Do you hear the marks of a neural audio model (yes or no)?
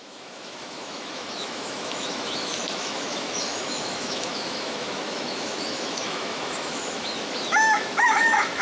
yes